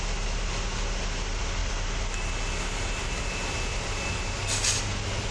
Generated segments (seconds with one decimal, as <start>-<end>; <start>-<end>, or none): none